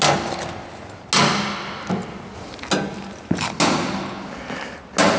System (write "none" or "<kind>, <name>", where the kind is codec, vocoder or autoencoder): none